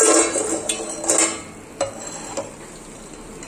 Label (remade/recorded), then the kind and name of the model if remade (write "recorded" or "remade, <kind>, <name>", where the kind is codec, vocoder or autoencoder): recorded